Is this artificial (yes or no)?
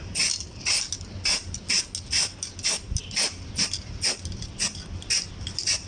no